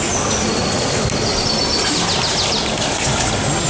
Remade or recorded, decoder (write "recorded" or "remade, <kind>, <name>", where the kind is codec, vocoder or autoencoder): recorded